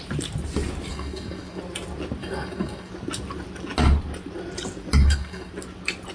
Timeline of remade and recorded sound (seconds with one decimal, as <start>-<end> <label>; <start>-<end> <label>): 0.0-0.9 recorded; 0.9-1.6 remade; 1.6-2.2 recorded; 2.2-2.9 remade; 2.9-5.0 recorded; 5.0-5.5 remade; 5.5-6.1 recorded